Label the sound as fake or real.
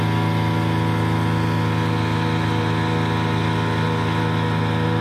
real